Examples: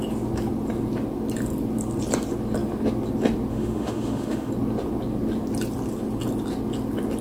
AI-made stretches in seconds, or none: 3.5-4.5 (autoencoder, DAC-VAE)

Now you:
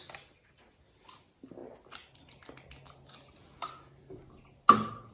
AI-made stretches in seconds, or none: none